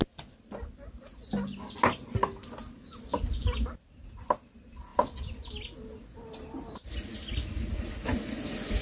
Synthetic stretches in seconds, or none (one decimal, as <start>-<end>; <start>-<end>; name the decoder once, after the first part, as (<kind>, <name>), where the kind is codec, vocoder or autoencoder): none